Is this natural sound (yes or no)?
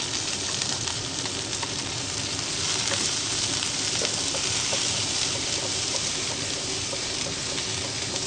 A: no